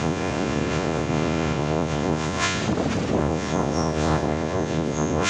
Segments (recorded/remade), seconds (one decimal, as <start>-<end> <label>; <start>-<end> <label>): 0.0-2.6 remade; 2.6-3.2 recorded; 3.2-5.3 remade